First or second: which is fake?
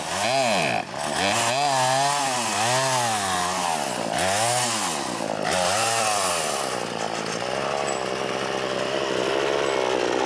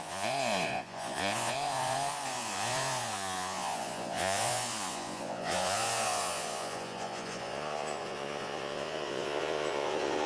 second